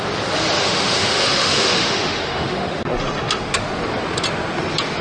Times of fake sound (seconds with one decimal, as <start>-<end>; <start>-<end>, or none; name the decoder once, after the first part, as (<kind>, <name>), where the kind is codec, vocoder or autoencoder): 0.6-2.8 (autoencoder, DAC-VAE)